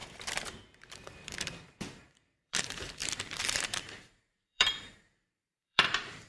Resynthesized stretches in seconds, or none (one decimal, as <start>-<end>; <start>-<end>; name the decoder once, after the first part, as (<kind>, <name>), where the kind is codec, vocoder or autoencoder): 0.0-6.3 (vocoder, BigVGAN v2)

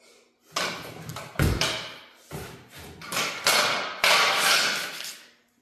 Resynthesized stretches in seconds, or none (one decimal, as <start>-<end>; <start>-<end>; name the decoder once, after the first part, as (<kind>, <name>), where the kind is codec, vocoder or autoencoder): none

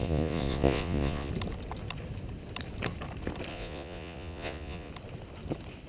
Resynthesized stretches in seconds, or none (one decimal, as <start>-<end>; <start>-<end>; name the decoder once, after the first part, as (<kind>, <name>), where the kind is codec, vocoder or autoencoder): 0.0-1.3 (vocoder, Vocos); 3.5-4.9

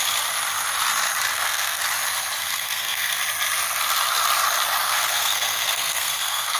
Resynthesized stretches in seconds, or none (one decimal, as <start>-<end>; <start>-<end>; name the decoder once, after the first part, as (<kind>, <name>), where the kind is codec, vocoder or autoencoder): 1.3-1.8 (codec, SNAC); 2.4-3.2; 4.8-6.6

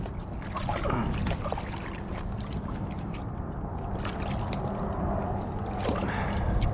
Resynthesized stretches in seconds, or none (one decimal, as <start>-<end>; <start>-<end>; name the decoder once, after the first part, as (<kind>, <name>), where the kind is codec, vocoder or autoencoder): none

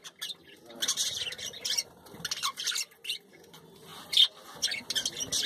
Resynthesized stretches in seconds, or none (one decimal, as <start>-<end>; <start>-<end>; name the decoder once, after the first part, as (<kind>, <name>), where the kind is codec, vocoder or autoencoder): none

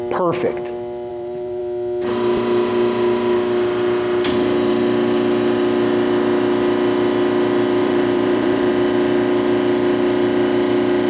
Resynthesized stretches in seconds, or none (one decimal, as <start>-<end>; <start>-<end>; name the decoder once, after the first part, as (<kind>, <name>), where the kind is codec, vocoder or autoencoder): 1.1-1.6 (vocoder, BigVGAN v2); 7.8-8.7